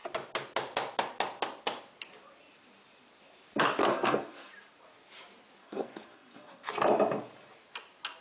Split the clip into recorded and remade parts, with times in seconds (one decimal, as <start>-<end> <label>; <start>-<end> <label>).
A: 0.0-3.8 recorded; 3.8-4.5 remade; 4.5-5.6 recorded; 5.6-6.7 remade; 6.7-8.2 recorded